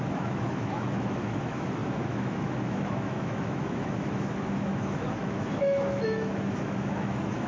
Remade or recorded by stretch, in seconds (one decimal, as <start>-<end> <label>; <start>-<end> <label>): 0.0-7.5 remade